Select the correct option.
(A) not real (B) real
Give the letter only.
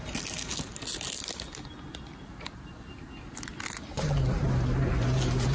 B